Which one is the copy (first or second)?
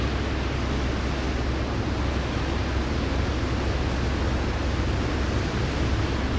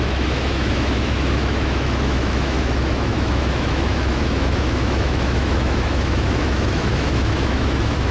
second